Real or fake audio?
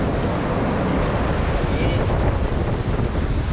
real